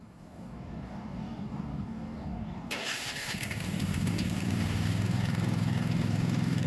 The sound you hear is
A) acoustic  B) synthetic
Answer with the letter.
B